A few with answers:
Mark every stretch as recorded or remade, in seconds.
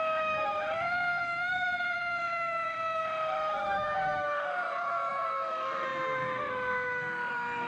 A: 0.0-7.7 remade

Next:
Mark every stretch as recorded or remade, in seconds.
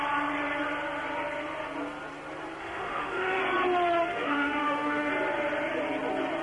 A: 0.0-2.6 recorded; 2.6-3.4 remade; 3.4-4.1 recorded; 4.1-5.1 remade; 5.1-6.4 recorded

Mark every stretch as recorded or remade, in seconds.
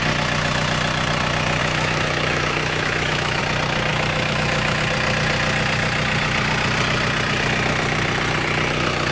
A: 0.0-1.6 recorded; 1.6-3.4 remade; 3.4-3.9 recorded; 3.9-4.8 remade; 4.8-9.1 recorded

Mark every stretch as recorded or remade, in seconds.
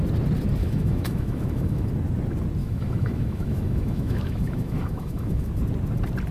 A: 0.0-0.6 recorded; 0.6-1.9 remade; 1.9-2.6 recorded; 2.6-5.5 remade; 5.5-6.3 recorded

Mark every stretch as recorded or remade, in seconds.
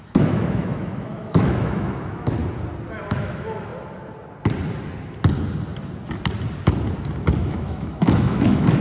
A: 0.0-2.4 remade; 2.4-3.1 recorded; 3.1-3.7 remade; 3.7-7.4 recorded; 7.4-8.8 remade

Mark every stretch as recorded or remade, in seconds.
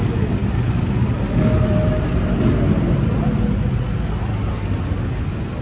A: 0.0-5.6 recorded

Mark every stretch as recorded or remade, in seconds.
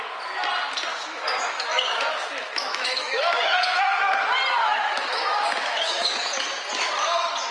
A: 0.0-0.9 recorded; 0.9-4.0 remade; 4.0-4.6 recorded; 4.6-6.3 remade; 6.3-7.5 recorded